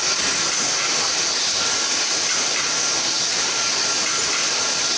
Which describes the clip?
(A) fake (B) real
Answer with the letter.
B